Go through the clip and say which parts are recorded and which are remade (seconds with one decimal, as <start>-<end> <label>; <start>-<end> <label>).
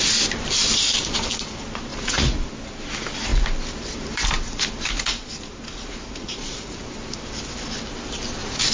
0.0-1.9 recorded; 1.9-2.5 remade; 2.5-6.1 recorded; 6.1-6.8 remade; 6.8-8.7 recorded